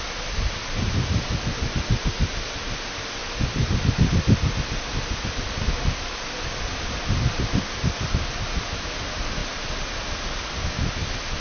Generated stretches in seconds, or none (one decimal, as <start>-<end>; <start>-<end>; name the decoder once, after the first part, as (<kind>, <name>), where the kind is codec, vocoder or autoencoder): none